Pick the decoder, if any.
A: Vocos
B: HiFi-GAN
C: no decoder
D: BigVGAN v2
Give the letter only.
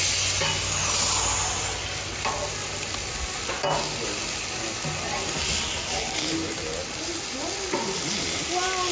C